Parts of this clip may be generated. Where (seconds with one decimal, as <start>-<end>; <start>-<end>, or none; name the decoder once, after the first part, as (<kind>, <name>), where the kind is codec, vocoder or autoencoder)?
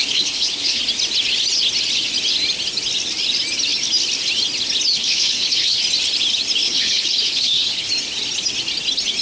0.0-0.8 (codec, HILCodec); 5.0-5.8; 6.6-7.9